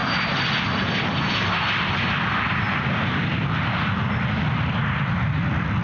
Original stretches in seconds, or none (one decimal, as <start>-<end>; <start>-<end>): 0.0-5.8